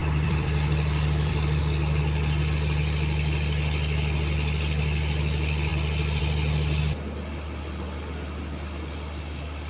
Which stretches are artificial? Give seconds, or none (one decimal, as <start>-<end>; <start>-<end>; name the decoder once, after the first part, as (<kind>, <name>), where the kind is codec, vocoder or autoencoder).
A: 0.0-1.6 (vocoder, BigVGAN v2); 5.7-6.2